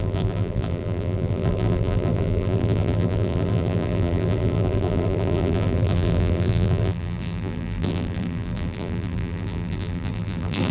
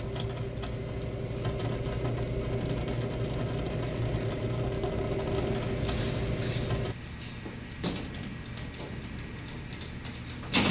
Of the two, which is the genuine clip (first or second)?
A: second